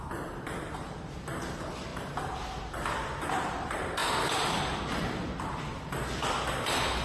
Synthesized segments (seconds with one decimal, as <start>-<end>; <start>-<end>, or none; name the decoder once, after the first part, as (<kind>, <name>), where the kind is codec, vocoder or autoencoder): none